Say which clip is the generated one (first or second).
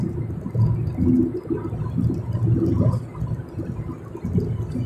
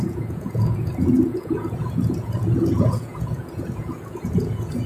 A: second